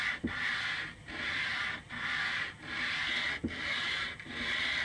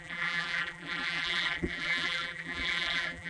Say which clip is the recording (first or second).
first